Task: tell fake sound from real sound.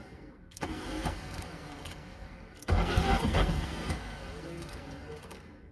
fake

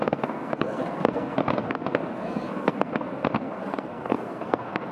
fake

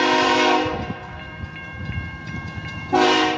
fake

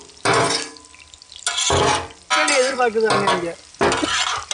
real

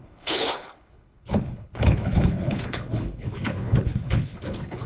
fake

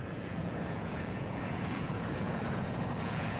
fake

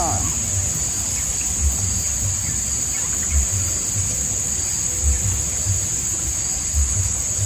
real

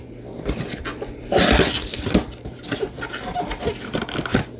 real